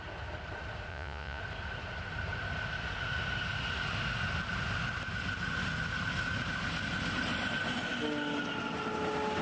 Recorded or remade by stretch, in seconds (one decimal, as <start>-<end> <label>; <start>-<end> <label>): 0.0-0.9 recorded; 0.9-1.4 remade; 1.4-9.4 recorded